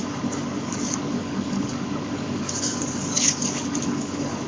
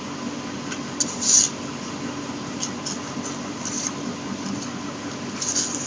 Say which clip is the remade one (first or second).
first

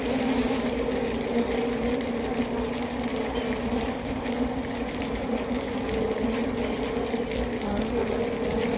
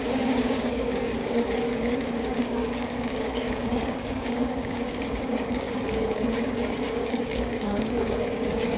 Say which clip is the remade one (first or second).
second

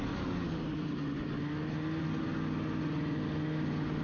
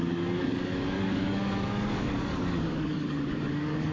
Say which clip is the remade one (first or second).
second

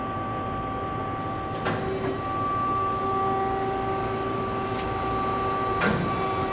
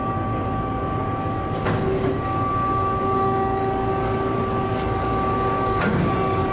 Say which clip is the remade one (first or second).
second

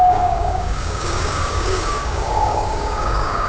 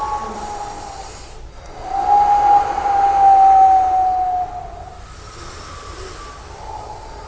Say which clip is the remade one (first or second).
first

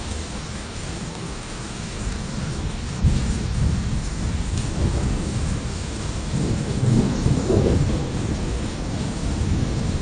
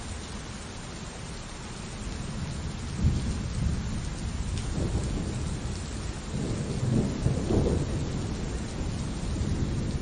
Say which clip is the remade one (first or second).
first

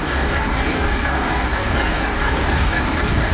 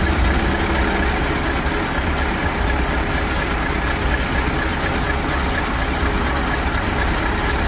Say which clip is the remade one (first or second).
first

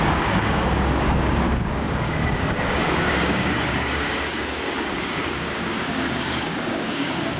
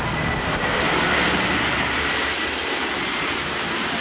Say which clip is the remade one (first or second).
first